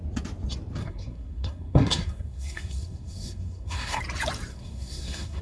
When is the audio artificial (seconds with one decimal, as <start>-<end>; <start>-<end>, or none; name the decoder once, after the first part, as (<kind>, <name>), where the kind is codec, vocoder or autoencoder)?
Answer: 0.8-4.0 (codec, SNAC); 4.5-5.4